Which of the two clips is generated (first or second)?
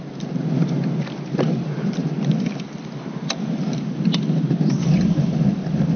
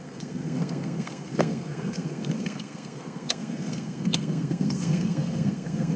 second